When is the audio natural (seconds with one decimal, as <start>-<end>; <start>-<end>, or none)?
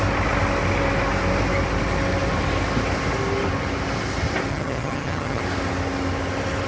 0.0-4.5; 5.4-6.7